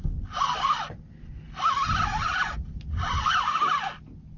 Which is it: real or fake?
real